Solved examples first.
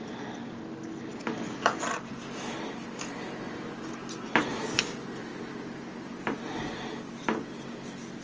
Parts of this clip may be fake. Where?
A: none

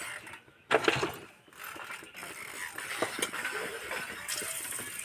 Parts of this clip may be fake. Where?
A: none